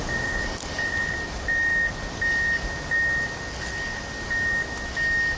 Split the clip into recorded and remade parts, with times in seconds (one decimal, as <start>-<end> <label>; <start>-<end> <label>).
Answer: 0.0-5.4 recorded